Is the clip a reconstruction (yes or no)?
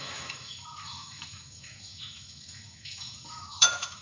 yes